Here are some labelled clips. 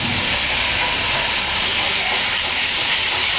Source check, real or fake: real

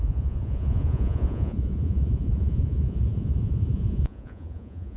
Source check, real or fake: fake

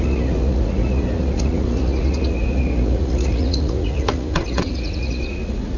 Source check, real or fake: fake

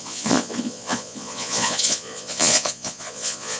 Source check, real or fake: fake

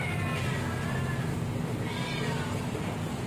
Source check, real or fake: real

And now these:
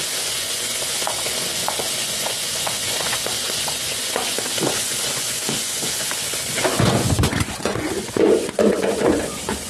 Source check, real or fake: fake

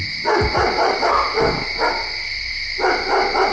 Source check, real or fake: real